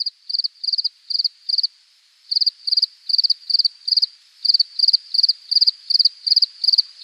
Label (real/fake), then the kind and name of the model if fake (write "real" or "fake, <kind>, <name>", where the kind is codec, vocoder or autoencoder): fake, vocoder, BigVGAN v2